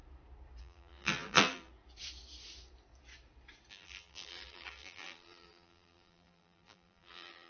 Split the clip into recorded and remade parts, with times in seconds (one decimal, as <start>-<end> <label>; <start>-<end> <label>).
0.0-0.6 recorded; 0.6-1.7 remade; 1.7-3.7 recorded; 3.7-7.5 remade

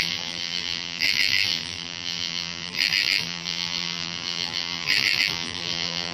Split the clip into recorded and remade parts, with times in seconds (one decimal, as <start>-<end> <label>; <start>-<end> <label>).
0.0-6.1 remade

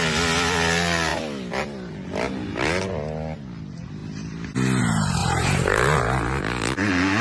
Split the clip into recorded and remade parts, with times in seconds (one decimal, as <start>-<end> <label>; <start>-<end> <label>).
0.0-5.2 recorded; 5.2-6.4 remade; 6.4-7.2 recorded

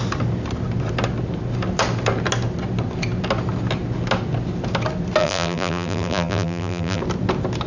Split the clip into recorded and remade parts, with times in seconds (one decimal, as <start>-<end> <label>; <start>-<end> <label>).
0.0-5.2 recorded; 5.2-7.0 remade; 7.0-7.7 recorded

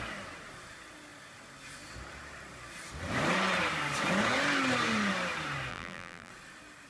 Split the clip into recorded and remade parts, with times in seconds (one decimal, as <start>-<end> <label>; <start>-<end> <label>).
0.0-5.7 recorded; 5.7-6.3 remade; 6.3-6.9 recorded

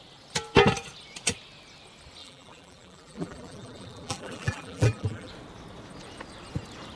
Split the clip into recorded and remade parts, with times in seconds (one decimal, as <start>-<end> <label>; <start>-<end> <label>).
0.0-2.2 recorded; 2.2-5.3 remade; 5.3-7.0 recorded

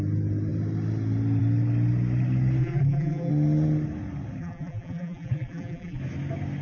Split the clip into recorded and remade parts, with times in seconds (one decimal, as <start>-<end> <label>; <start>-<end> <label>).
0.0-2.6 recorded; 2.6-3.3 remade; 3.3-4.4 recorded; 4.4-6.0 remade; 6.0-6.6 recorded